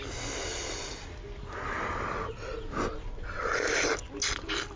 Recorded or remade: recorded